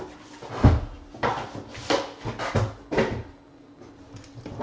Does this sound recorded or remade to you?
recorded